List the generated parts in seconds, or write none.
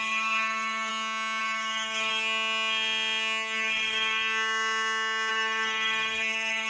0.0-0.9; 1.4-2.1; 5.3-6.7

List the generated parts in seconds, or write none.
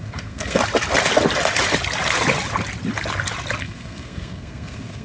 0.0-0.6; 3.6-5.0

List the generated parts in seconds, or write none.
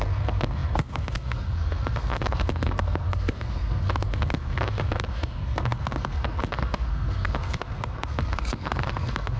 0.0-9.4